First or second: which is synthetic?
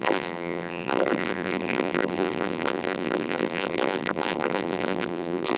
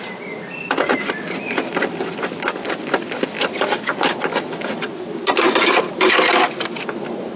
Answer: first